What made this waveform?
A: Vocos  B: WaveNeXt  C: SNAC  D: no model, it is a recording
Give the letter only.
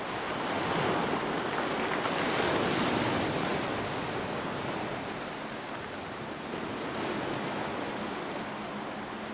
D